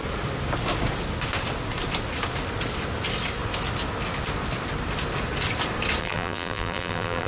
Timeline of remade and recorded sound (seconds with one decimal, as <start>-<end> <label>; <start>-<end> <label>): 0.0-6.0 recorded; 6.0-7.3 remade